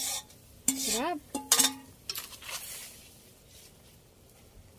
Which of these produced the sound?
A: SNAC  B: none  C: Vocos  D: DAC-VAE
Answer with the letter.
B